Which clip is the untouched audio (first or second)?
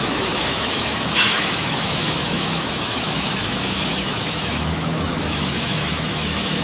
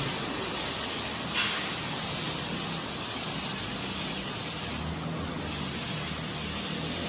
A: second